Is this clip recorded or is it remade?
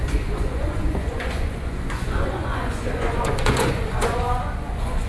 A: remade